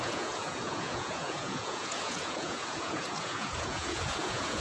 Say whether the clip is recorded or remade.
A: remade